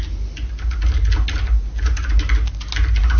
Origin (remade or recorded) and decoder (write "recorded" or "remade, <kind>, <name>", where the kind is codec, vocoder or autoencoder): recorded